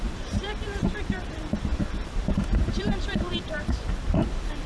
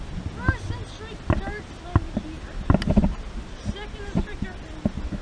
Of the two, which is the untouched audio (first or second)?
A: second